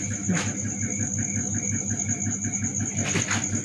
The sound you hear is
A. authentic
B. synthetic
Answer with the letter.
A